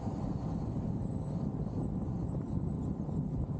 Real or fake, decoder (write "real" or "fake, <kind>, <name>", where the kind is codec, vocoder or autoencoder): real